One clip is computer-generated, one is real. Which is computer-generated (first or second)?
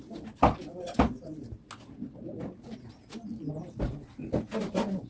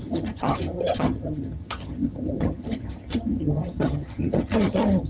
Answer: second